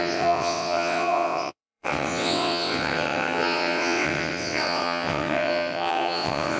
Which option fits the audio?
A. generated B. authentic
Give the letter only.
A